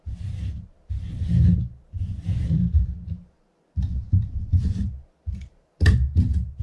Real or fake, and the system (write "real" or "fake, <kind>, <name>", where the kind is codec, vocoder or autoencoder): real